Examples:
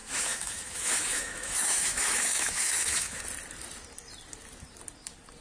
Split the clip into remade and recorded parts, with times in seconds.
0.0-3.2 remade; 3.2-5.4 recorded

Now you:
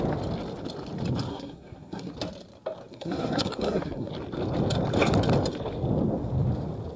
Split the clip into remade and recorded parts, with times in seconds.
0.0-1.3 recorded; 1.3-2.1 remade; 2.1-2.9 recorded; 2.9-4.1 remade; 4.1-7.0 recorded

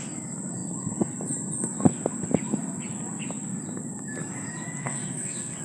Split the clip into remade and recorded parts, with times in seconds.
0.0-4.8 recorded; 4.8-5.6 remade

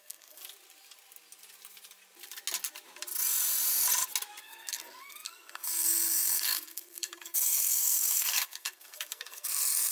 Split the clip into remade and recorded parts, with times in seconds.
0.0-0.4 remade; 0.4-4.4 recorded; 4.4-9.9 remade